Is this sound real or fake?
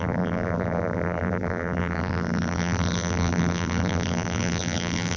fake